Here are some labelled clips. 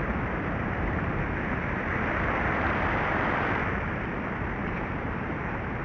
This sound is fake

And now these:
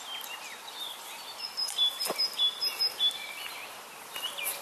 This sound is real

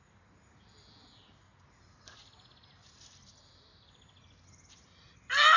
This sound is real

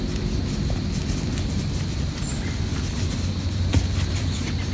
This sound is real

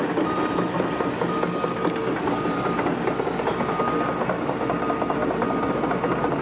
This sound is real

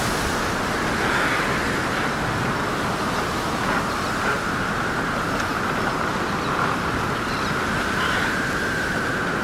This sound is real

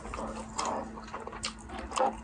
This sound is real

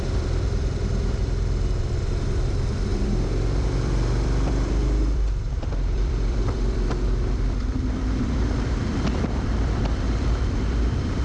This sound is fake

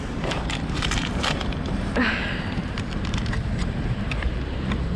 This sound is fake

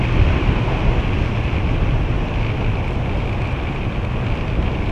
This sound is real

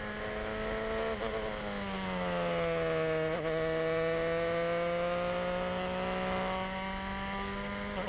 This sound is real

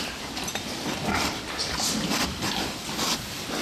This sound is fake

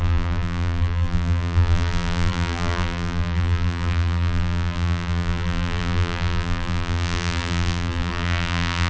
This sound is fake